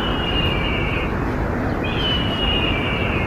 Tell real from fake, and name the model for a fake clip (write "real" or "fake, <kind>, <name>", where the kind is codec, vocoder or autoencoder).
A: real